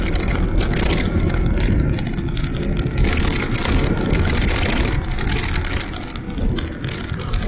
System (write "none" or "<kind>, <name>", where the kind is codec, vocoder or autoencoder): none